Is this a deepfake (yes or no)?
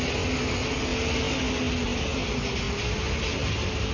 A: no